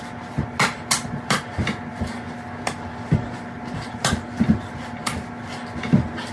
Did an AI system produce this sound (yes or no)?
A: no